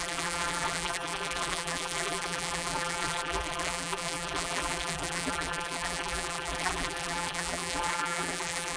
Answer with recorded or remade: remade